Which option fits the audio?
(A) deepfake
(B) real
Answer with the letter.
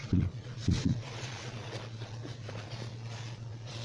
A